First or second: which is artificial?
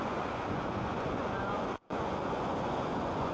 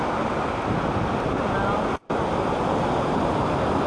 first